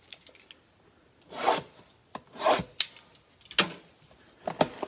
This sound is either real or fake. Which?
real